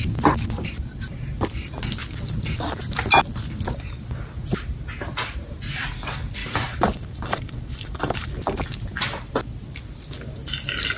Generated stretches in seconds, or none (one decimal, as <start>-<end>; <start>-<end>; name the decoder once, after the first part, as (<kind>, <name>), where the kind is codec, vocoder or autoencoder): 6.4-8.3 (vocoder, BigVGAN v2)